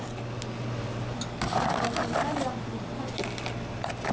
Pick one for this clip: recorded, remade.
recorded